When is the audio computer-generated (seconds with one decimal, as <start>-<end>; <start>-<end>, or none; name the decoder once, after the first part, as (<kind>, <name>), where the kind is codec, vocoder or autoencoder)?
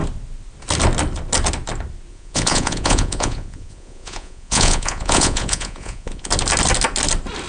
2.1-6.3 (vocoder, Vocos)